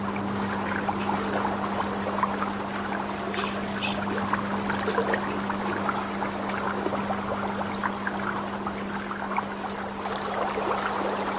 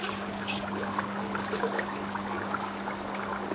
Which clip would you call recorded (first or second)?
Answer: first